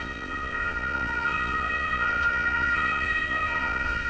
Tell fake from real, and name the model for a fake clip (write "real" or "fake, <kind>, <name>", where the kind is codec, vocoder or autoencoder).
fake, vocoder, Vocos